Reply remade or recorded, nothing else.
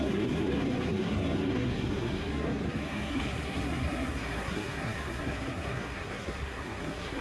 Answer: remade